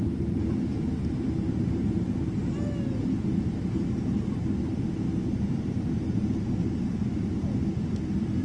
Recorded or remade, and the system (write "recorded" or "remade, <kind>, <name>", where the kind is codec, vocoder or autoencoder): recorded